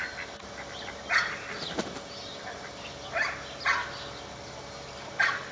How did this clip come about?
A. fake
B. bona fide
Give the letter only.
B